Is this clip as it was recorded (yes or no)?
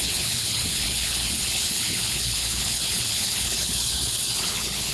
no